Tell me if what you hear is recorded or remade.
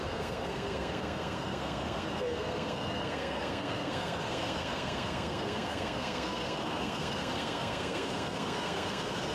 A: remade